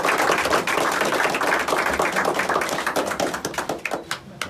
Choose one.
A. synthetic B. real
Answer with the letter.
B